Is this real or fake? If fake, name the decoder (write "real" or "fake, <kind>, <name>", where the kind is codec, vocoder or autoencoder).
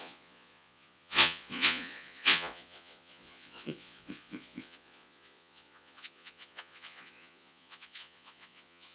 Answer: fake, vocoder, Vocos